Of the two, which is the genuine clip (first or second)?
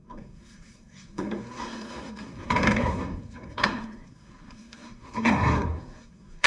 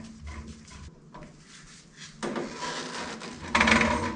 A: second